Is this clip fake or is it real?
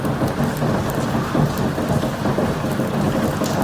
real